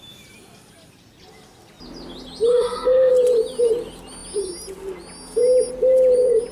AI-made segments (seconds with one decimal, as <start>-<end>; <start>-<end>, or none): 2.5-3.1